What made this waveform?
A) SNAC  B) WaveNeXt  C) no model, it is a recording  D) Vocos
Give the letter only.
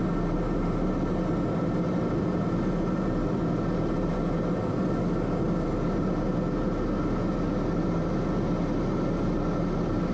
C